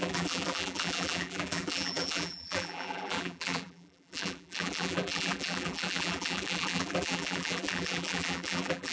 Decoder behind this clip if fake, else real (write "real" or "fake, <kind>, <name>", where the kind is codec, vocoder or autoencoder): fake, vocoder, BigVGAN v2